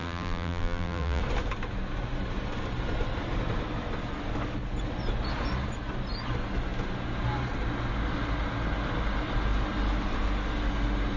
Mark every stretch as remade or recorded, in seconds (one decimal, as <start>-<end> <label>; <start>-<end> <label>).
0.0-1.2 remade; 1.2-11.2 recorded